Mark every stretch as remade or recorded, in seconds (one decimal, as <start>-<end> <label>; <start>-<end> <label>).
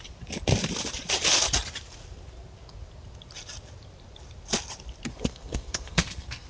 0.0-5.1 recorded; 5.1-6.5 remade